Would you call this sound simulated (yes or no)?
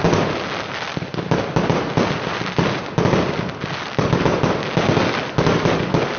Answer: no